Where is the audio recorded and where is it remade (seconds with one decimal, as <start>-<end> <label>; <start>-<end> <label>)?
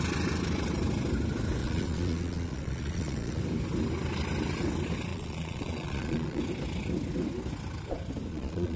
0.0-1.6 recorded; 1.6-3.4 remade; 3.4-5.1 recorded; 5.1-6.4 remade; 6.4-8.3 recorded; 8.3-8.8 remade